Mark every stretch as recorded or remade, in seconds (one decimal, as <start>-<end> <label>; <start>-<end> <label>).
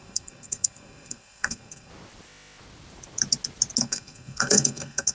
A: 0.0-1.9 remade; 1.9-3.8 recorded; 3.8-5.1 remade